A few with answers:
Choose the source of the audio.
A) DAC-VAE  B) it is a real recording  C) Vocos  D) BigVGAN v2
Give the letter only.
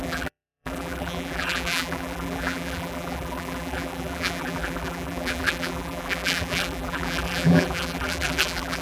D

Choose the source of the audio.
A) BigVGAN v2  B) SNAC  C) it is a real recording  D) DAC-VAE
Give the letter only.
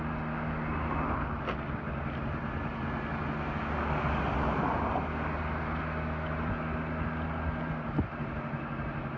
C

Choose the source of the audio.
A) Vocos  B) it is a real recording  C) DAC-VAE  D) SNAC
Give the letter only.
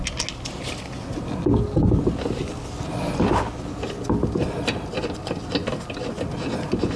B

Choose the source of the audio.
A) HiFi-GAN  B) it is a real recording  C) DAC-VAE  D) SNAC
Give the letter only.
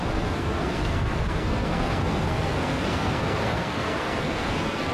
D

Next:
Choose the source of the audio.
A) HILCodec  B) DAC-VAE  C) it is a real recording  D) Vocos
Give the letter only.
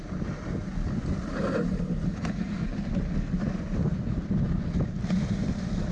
C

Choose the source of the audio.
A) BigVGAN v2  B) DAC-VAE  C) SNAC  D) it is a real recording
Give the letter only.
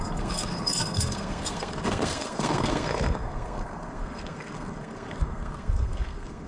C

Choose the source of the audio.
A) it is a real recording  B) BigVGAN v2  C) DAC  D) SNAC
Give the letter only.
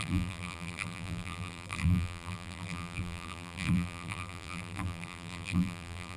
B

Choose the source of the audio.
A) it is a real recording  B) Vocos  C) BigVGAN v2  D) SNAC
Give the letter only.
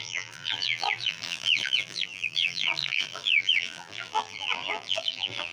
C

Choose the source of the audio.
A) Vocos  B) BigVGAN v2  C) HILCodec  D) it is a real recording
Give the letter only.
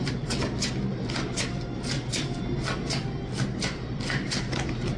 D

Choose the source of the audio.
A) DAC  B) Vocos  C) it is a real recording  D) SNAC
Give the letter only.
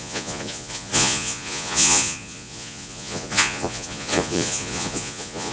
B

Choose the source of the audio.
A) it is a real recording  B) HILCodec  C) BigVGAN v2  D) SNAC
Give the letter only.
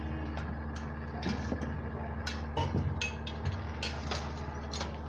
A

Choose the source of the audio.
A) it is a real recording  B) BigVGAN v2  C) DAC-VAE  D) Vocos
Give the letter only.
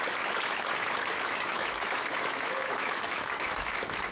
C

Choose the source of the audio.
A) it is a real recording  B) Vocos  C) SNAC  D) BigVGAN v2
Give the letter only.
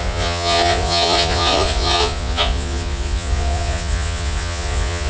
B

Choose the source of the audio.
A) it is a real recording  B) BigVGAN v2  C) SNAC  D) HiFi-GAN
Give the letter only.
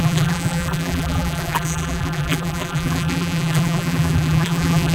B